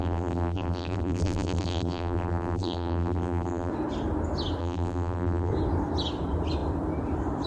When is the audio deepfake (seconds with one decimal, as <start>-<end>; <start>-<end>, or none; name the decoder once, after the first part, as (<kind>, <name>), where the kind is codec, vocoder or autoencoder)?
0.0-3.7 (vocoder, BigVGAN v2); 4.6-5.5